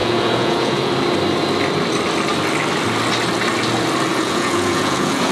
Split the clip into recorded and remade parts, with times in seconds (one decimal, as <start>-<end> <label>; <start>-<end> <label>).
0.0-0.9 remade; 0.9-4.1 recorded; 4.1-5.3 remade